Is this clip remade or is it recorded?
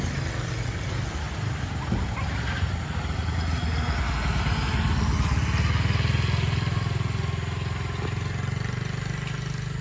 recorded